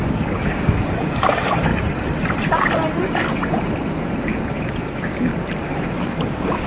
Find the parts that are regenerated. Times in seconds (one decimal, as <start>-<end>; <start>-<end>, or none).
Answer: 0.0-1.7; 4.5-5.3; 6.1-6.7